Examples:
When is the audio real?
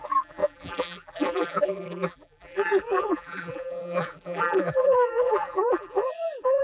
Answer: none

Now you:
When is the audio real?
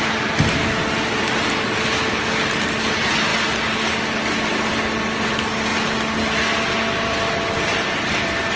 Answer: 0.0-8.6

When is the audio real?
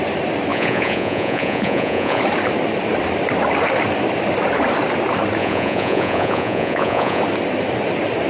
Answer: 0.0-0.5; 2.2-5.4; 7.2-8.3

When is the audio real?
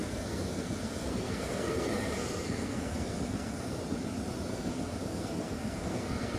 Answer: 3.8-4.5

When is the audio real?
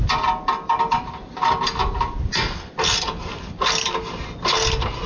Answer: 0.0-5.1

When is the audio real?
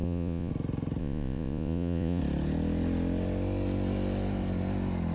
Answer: 0.5-1.0; 2.2-5.1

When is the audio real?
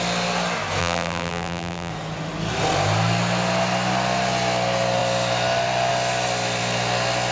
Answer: 0.0-0.8; 1.9-7.3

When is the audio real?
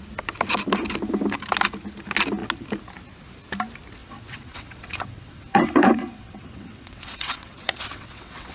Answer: 0.0-4.0